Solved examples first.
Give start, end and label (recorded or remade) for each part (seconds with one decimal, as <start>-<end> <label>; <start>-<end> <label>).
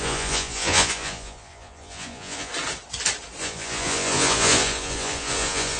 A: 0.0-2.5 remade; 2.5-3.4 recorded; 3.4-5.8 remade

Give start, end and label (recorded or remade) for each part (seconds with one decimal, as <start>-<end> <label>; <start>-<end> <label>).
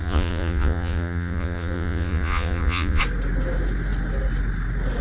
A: 0.0-3.0 remade; 3.0-5.0 recorded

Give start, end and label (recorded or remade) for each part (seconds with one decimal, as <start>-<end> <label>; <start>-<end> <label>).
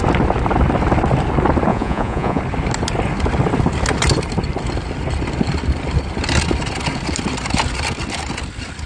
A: 0.0-1.7 recorded; 1.7-2.4 remade; 2.4-8.9 recorded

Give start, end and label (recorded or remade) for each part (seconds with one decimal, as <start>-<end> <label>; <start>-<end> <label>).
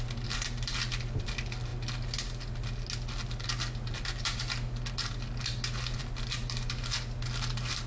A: 0.0-7.9 recorded